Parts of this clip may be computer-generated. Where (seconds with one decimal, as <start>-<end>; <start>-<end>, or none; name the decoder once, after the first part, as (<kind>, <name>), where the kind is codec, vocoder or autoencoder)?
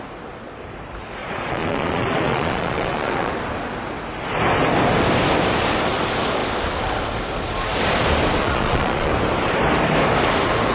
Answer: 1.2-3.3 (vocoder, Vocos); 8.4-9.1